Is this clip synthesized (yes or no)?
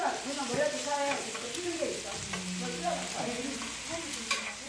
no